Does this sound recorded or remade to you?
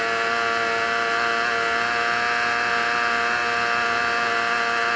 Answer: recorded